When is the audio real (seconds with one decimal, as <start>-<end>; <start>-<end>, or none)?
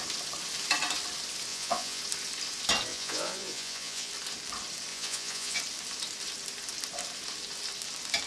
0.0-1.5; 2.0-2.9; 4.1-4.9; 5.6-8.3